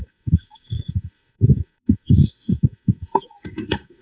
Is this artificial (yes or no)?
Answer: yes